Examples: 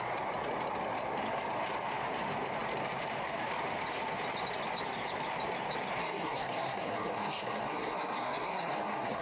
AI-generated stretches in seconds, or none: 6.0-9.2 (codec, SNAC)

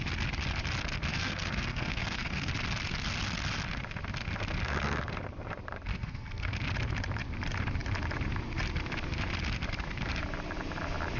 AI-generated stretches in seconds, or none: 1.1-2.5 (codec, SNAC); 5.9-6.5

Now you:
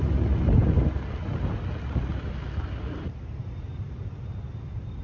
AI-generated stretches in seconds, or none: none